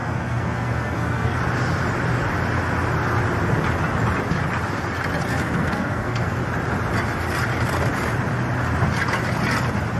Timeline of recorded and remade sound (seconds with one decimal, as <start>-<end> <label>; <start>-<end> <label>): 0.0-1.4 remade; 1.4-5.3 recorded; 5.3-6.4 remade; 6.4-10.0 recorded